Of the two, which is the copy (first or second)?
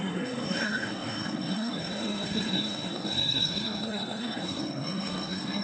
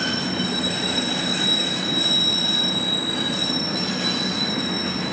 first